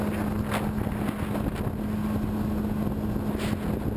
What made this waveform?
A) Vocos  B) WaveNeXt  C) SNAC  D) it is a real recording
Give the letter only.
D